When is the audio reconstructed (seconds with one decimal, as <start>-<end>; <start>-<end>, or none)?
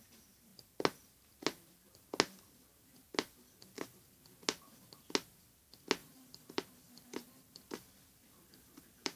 6.0-9.2